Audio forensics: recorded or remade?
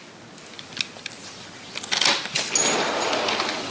recorded